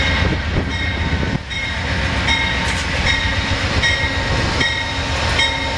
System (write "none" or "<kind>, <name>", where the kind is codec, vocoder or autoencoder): none